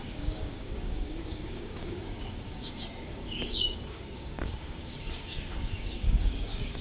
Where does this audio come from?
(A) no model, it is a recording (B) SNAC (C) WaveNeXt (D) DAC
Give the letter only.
D